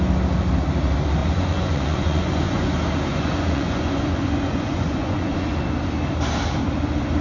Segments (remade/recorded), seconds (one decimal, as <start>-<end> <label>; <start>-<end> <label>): 0.0-1.2 recorded; 1.2-2.7 remade; 2.7-3.1 recorded; 3.1-5.6 remade; 5.6-7.2 recorded